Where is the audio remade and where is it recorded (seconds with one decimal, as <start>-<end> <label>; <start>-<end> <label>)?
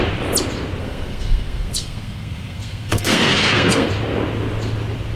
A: 0.0-0.8 recorded; 0.8-3.9 remade; 3.9-5.2 recorded